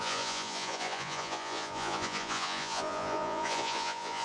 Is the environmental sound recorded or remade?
remade